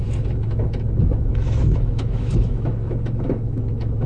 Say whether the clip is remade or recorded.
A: remade